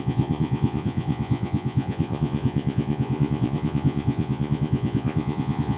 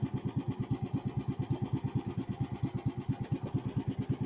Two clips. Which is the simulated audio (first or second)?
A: first